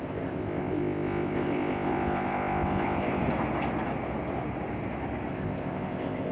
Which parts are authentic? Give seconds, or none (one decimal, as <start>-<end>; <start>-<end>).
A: 3.2-5.3